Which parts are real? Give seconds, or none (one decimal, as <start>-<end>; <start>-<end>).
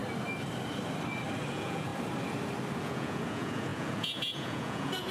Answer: 0.0-1.5; 1.9-2.8